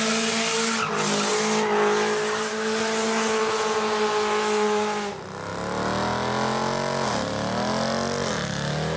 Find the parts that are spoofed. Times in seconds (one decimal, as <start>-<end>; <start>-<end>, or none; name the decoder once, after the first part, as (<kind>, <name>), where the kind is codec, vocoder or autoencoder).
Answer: none